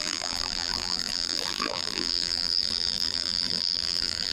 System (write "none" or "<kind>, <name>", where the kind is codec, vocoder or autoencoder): vocoder, BigVGAN v2